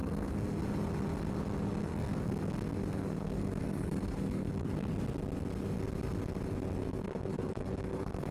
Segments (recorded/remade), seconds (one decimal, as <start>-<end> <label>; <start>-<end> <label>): 0.0-0.6 remade; 0.6-1.8 recorded; 1.8-4.9 remade; 4.9-6.8 recorded; 6.8-8.3 remade